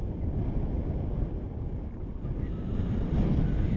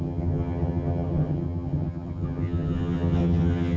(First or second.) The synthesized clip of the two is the second